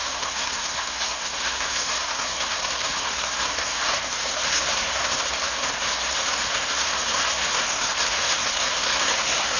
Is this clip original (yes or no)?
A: no